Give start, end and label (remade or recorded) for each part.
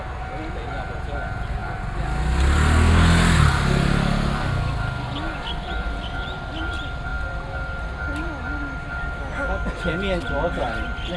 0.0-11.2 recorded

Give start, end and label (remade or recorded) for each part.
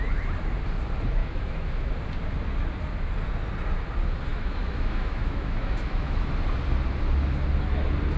0.0-1.2 recorded; 1.2-1.9 remade; 1.9-4.3 recorded; 4.3-6.3 remade; 6.3-8.2 recorded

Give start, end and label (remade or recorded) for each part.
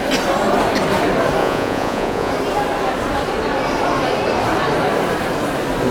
0.0-1.4 recorded; 1.4-2.3 remade; 2.3-5.9 recorded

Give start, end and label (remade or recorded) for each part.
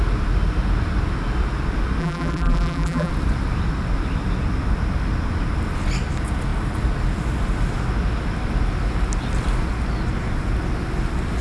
0.0-2.0 recorded; 2.0-3.1 remade; 3.1-11.4 recorded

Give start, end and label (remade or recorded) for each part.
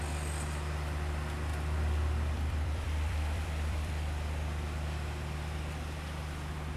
0.0-1.5 recorded; 1.5-3.9 remade; 3.9-6.8 recorded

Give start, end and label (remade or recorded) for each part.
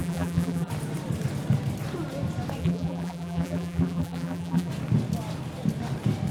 0.0-0.7 remade; 0.7-2.6 recorded; 2.6-4.7 remade; 4.7-6.3 recorded